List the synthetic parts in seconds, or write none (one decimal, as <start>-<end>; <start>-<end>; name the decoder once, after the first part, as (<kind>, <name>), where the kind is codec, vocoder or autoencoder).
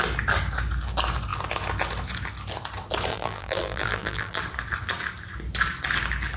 3.1-4.4 (vocoder, BigVGAN v2)